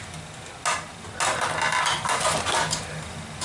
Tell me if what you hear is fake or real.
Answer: real